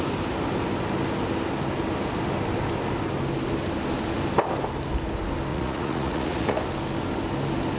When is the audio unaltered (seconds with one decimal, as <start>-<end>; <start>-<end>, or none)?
0.0-5.5; 6.6-7.8